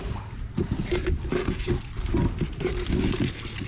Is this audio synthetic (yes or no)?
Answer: no